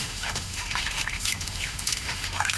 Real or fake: fake